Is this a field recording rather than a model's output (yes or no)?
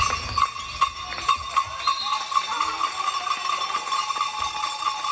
yes